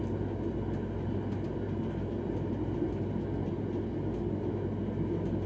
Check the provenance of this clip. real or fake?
real